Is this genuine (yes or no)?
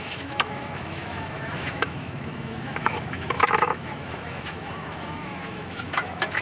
no